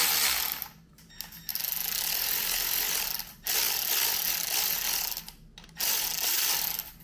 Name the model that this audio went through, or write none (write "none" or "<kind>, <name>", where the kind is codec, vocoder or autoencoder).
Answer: none